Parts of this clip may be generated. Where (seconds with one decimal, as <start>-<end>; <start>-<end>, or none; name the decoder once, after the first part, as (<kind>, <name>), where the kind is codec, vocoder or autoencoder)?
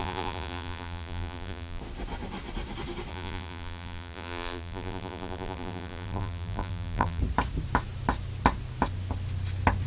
0.0-1.8 (vocoder, BigVGAN v2); 3.1-7.2